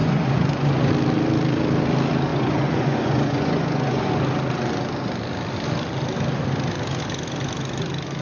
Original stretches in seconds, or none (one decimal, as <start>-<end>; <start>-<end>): 0.9-2.3; 4.1-8.2